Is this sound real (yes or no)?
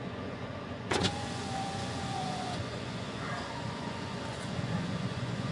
no